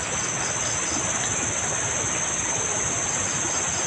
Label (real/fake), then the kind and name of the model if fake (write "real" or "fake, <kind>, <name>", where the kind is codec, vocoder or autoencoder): real